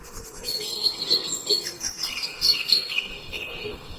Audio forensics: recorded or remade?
remade